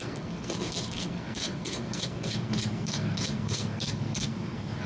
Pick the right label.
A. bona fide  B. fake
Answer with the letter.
B